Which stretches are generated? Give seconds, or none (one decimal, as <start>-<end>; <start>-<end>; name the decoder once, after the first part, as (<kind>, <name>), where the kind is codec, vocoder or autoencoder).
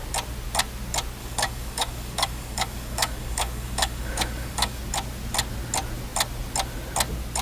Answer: 1.2-4.8 (codec, DAC)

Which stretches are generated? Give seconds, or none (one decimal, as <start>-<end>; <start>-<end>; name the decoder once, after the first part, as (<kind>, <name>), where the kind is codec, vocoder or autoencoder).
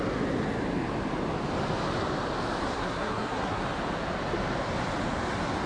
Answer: 2.6-3.6 (codec, SNAC)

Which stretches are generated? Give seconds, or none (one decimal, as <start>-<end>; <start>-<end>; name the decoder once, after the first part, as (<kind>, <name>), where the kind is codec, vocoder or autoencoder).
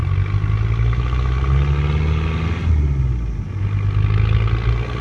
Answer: none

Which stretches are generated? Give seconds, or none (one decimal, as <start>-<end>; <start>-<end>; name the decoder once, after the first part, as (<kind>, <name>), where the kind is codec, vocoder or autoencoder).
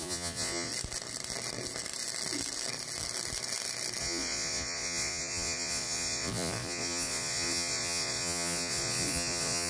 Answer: 0.0-0.7 (vocoder, Vocos); 4.0-9.7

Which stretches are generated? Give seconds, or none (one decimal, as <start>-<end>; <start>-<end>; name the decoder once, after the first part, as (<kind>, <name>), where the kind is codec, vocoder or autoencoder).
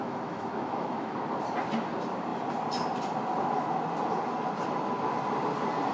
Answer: 0.0-1.1 (autoencoder, DAC-VAE)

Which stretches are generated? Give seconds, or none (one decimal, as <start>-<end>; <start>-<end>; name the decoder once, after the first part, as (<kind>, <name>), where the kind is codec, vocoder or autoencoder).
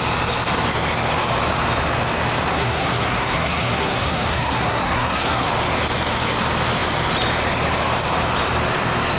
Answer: 2.5-5.5 (codec, SNAC)